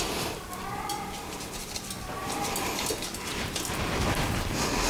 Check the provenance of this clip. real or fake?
real